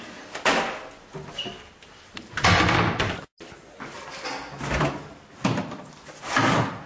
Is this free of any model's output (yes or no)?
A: yes